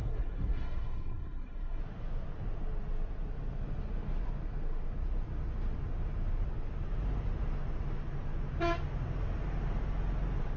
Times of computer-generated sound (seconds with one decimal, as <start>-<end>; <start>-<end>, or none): 0.0-1.8